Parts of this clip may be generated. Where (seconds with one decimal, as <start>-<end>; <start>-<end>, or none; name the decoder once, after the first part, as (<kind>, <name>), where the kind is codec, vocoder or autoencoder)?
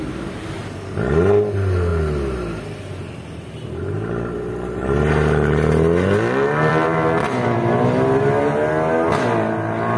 none